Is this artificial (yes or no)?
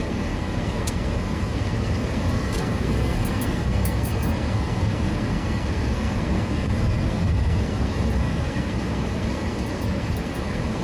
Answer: yes